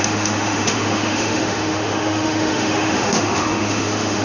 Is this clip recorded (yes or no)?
no